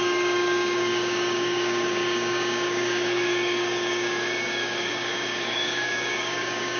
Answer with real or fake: fake